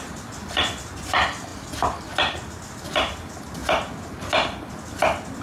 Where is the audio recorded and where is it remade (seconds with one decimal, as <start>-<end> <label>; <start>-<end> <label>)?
0.0-5.4 recorded